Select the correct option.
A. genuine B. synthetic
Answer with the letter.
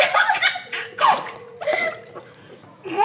B